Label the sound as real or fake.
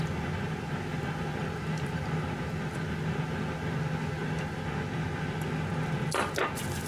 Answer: real